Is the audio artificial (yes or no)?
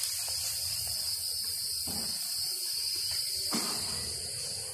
yes